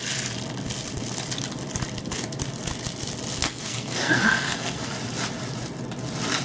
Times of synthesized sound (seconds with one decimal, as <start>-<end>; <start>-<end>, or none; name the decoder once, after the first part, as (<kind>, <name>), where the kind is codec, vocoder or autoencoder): 3.4-4.9 (codec, SNAC)